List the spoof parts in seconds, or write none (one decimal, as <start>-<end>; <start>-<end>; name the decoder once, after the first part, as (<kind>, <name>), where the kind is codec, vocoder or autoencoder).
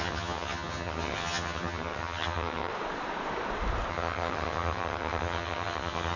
0.0-2.7 (vocoder, HiFi-GAN); 3.9-6.2